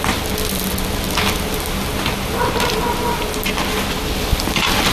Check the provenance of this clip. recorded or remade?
recorded